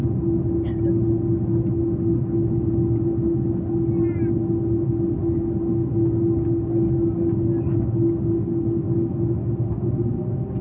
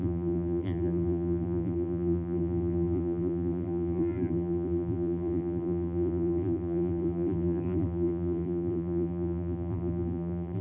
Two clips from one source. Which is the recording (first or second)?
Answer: first